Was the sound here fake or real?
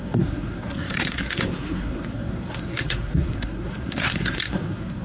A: fake